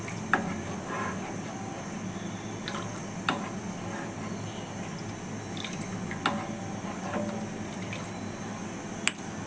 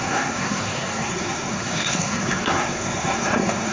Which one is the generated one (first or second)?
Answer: second